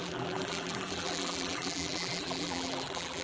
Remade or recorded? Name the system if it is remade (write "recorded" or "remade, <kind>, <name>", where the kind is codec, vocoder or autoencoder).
remade, vocoder, BigVGAN v2